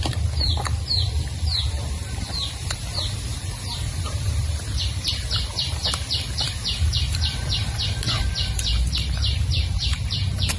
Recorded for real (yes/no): no